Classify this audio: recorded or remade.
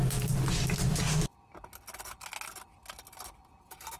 recorded